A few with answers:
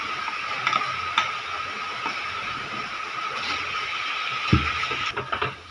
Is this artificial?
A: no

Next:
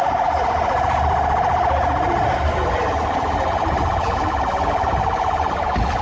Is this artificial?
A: no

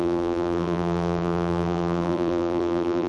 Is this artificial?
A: yes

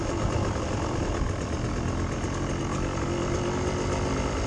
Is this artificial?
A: no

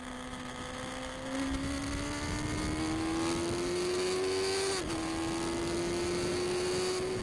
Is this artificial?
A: no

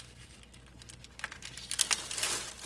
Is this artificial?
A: no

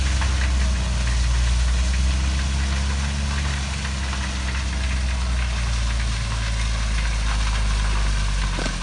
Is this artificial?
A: no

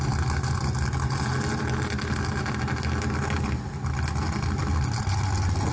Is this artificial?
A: no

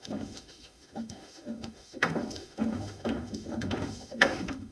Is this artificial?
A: yes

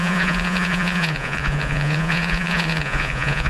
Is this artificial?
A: yes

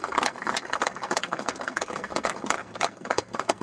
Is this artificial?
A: yes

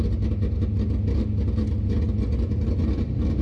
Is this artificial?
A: no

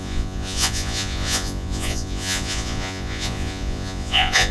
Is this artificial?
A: yes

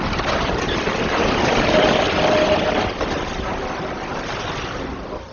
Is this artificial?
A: yes